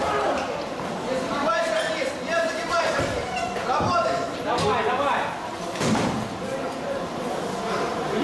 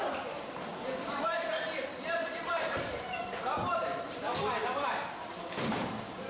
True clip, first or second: first